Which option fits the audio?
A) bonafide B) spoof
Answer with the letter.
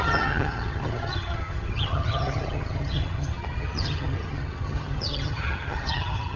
B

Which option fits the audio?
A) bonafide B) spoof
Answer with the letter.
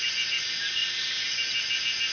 A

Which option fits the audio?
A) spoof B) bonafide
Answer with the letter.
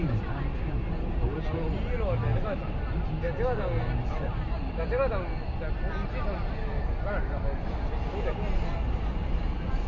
B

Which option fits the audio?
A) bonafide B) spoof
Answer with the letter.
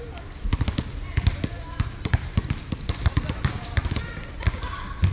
A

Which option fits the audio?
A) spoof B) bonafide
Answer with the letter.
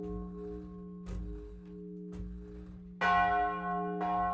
B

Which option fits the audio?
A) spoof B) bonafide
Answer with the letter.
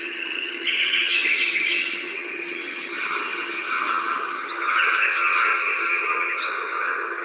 A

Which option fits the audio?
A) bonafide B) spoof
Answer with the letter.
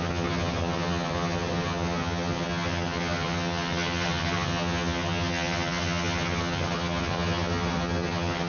B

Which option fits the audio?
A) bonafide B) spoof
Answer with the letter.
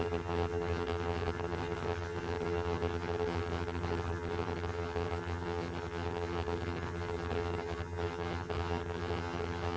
B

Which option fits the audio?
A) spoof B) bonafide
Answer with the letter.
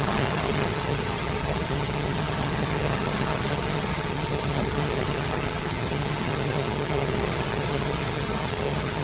A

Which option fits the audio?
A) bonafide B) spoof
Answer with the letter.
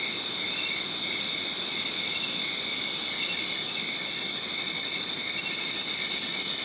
A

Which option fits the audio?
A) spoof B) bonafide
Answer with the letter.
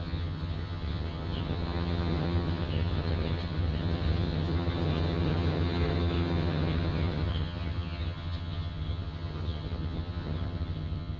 A